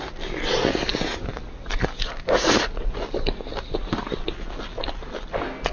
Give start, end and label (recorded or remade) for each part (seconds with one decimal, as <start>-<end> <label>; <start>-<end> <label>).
0.0-5.7 recorded